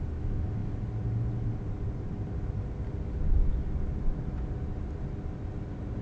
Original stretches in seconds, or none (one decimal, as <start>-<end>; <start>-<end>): 0.0-6.0

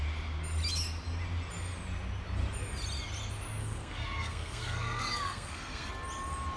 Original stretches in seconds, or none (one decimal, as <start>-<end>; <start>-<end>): 0.0-3.6; 5.9-6.6

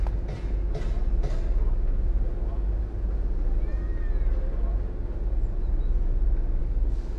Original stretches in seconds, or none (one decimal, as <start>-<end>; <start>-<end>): 0.0-6.6

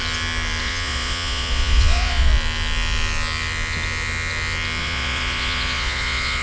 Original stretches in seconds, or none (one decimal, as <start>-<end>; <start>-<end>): 0.0-0.6; 2.3-4.8